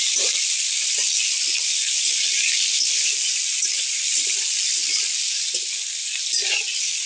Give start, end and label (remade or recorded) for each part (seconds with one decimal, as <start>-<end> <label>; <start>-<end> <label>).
0.0-4.8 recorded; 4.8-5.9 remade; 5.9-7.1 recorded

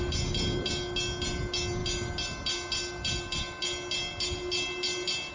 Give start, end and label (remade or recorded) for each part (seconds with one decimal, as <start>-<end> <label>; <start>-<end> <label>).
0.0-5.3 recorded

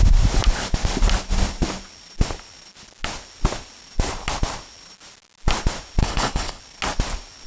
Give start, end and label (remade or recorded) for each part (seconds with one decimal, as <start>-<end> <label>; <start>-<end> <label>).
0.0-6.0 recorded; 6.0-6.6 remade; 6.6-7.5 recorded

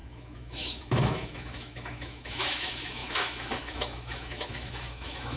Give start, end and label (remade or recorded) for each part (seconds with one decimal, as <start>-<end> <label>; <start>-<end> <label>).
0.0-5.4 remade